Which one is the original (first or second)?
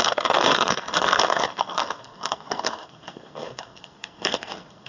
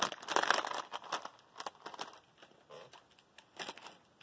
second